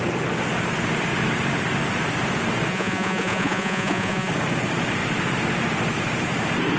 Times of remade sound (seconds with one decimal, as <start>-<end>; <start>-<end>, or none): 2.7-4.3